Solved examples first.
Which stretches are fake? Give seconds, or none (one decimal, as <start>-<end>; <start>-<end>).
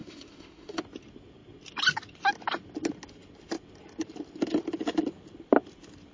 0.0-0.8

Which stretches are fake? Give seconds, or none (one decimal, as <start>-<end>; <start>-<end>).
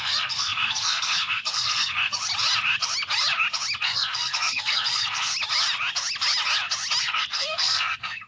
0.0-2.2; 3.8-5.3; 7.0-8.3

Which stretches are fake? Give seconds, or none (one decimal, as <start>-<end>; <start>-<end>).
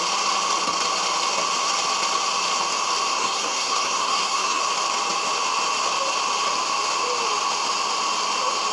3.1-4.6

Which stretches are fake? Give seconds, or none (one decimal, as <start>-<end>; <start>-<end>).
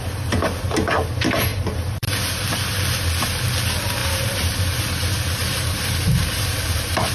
1.5-2.2; 4.0-4.8; 5.4-7.1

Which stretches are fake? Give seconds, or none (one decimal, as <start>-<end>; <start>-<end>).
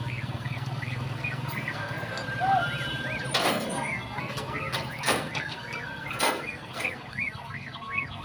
0.0-2.2; 3.5-8.2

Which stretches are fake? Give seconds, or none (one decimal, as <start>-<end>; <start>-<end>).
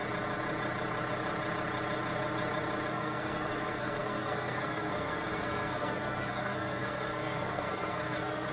2.9-8.5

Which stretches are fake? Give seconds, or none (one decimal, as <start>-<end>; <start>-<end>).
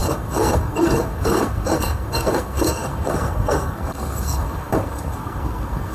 0.0-5.9